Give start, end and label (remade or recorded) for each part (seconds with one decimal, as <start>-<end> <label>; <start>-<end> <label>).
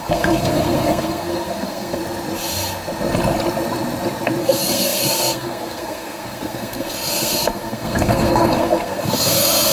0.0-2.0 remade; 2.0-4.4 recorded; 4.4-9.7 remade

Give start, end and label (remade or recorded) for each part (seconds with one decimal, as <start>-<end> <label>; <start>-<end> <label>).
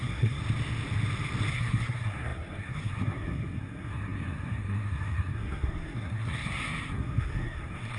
0.0-0.4 remade; 0.4-1.5 recorded; 1.5-8.0 remade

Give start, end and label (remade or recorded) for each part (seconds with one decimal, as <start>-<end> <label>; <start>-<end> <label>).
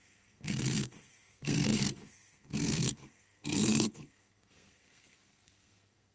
0.0-6.1 remade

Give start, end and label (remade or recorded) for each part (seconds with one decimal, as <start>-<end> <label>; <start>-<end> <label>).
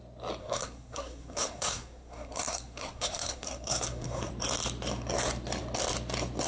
0.0-0.4 recorded; 0.4-4.3 remade; 4.3-6.5 recorded